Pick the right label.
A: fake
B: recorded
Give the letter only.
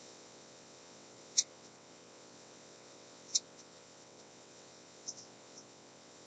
A